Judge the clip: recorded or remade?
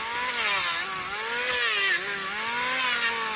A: recorded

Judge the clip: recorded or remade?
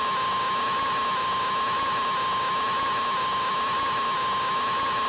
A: remade